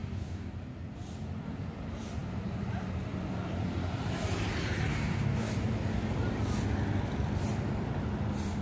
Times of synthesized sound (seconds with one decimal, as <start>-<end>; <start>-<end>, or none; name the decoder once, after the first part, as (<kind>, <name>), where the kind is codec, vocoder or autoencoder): 0.0-0.5 (codec, DAC); 4.9-5.5